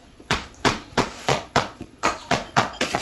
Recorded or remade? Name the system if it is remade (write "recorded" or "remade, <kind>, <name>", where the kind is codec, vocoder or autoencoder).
remade, vocoder, Vocos